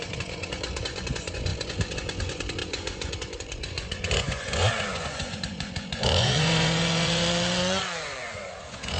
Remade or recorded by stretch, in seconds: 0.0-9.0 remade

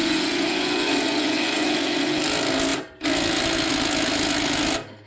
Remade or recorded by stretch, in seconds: 0.0-2.2 remade; 2.2-5.1 recorded